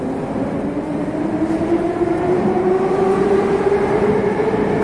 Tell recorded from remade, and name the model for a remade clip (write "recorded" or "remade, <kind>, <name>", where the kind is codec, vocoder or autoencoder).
recorded